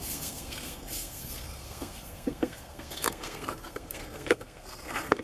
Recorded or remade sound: remade